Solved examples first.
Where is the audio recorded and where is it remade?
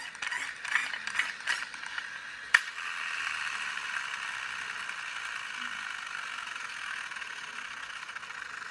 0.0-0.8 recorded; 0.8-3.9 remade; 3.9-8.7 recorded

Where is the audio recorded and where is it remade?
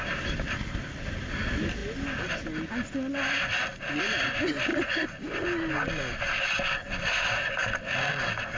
0.0-4.7 recorded; 4.7-5.3 remade; 5.3-8.6 recorded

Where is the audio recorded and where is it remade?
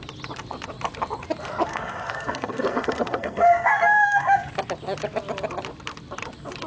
0.0-1.7 recorded; 1.7-4.5 remade; 4.5-6.7 recorded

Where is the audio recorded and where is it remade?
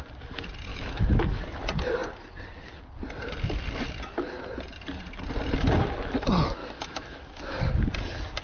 0.0-0.7 recorded; 0.7-1.4 remade; 1.4-6.6 recorded; 6.6-7.7 remade; 7.7-8.4 recorded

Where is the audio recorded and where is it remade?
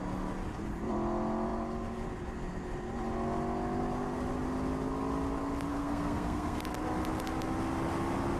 0.0-5.7 recorded; 5.7-6.6 remade; 6.6-8.4 recorded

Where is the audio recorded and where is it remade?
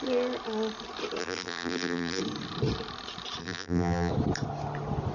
0.0-1.2 recorded; 1.2-2.2 remade; 2.2-3.4 recorded; 3.4-4.1 remade; 4.1-5.1 recorded